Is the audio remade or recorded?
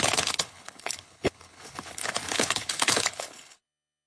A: remade